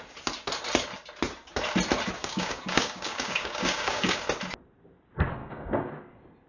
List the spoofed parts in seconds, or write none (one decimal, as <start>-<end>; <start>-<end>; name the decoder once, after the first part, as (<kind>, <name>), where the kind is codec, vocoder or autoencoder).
2.2-4.2 (codec, DAC); 5.4-5.9